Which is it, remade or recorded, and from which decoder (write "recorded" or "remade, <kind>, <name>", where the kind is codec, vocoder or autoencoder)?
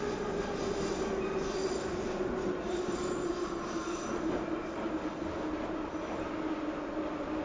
recorded